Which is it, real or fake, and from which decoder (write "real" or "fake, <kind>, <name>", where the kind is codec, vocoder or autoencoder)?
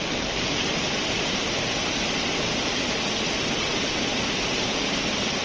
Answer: real